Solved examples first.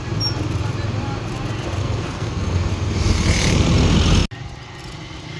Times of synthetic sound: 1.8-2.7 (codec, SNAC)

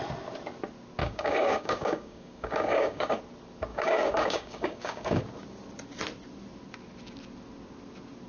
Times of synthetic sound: 1.0-3.2 (codec, DAC); 3.7-5.2